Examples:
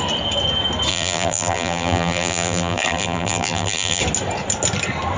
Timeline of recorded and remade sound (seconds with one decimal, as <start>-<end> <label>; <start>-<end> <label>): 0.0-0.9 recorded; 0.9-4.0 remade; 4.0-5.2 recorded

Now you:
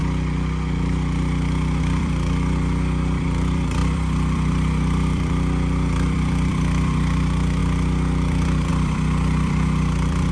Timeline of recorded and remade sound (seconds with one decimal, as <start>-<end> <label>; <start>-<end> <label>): 0.0-1.8 recorded; 1.8-10.3 remade

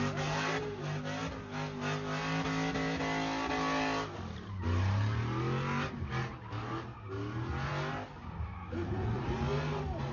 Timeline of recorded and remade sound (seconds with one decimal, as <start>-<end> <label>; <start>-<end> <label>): 0.0-10.1 recorded

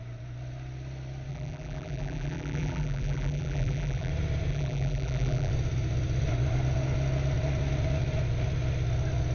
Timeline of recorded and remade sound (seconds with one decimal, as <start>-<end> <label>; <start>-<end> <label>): 0.0-1.3 recorded; 1.3-4.1 remade; 4.1-4.5 recorded; 4.5-5.5 remade; 5.5-9.3 recorded

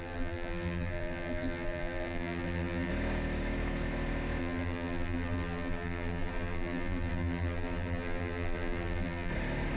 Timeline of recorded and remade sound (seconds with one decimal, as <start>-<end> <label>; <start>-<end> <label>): 0.0-2.9 remade; 2.9-4.4 recorded; 4.4-9.3 remade; 9.3-9.8 recorded